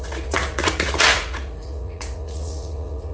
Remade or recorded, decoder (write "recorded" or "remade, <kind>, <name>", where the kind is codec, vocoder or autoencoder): remade, vocoder, Vocos